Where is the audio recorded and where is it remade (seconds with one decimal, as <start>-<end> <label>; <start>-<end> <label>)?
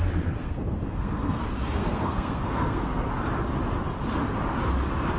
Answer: 0.0-0.4 recorded; 0.4-1.4 remade; 1.4-1.8 recorded; 1.8-3.1 remade; 3.1-5.2 recorded